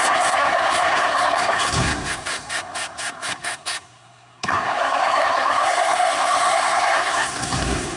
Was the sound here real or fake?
fake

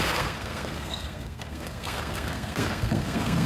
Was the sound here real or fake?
fake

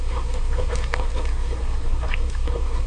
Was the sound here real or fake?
fake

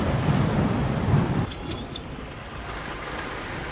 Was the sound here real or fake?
real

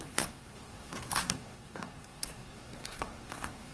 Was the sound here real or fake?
fake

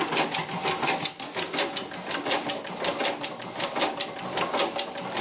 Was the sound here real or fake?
real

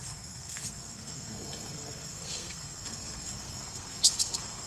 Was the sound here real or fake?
fake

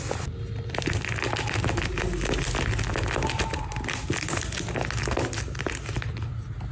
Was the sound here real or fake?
real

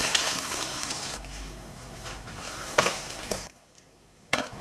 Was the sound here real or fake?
fake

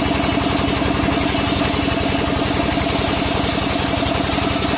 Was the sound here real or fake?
real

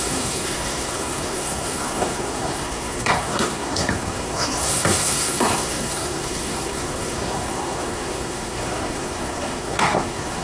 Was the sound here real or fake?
fake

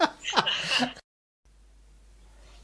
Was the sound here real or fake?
real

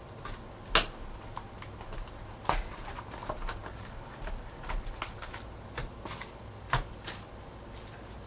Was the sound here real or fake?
real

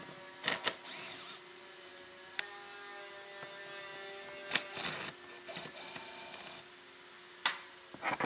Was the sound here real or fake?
real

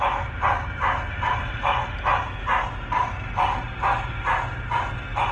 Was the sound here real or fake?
real